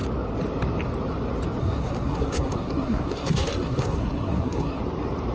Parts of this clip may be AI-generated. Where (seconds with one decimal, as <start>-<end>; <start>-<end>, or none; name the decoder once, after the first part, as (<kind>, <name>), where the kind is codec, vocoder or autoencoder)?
1.6-4.8 (codec, SNAC)